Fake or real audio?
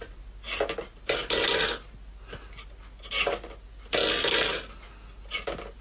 real